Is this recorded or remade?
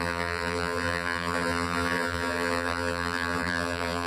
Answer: remade